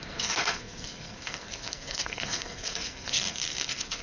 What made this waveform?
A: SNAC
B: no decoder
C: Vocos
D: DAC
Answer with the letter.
A